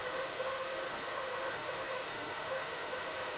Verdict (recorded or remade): remade